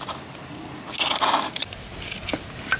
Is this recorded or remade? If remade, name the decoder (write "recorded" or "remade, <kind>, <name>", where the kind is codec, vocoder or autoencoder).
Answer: recorded